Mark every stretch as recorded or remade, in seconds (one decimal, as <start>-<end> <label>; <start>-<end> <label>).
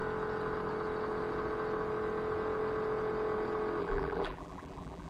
0.0-3.8 recorded; 3.8-5.1 remade